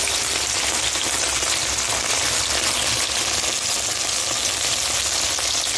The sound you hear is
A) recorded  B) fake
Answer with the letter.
A